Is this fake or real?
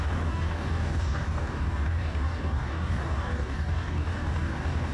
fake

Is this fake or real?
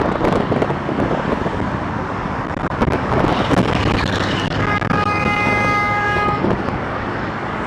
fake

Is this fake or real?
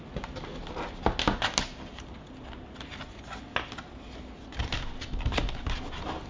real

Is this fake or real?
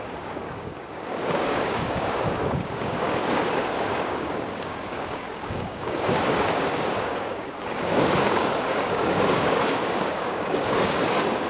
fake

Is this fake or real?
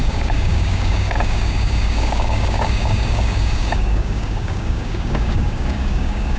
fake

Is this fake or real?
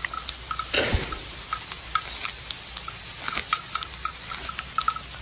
real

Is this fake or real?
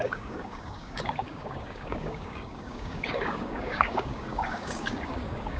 fake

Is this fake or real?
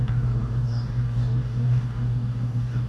fake